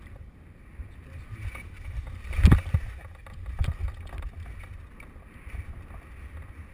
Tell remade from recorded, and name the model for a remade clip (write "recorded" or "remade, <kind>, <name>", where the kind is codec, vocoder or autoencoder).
recorded